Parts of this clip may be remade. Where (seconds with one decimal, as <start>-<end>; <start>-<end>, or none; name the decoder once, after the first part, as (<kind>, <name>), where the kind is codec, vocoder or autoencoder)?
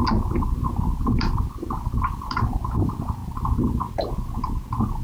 1.0-3.2 (vocoder, BigVGAN v2)